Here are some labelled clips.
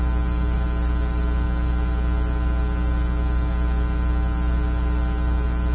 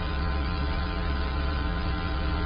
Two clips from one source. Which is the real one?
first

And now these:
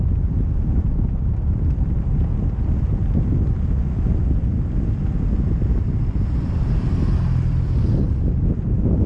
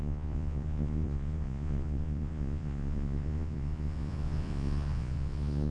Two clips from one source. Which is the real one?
first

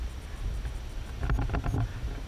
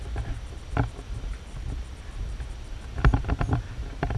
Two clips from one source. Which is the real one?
first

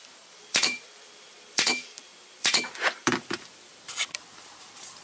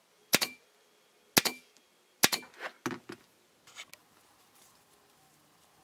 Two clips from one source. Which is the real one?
second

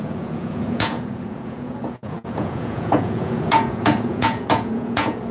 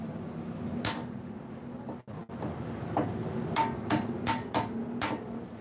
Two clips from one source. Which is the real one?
second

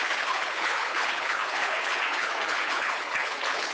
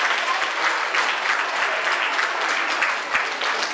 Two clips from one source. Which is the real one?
second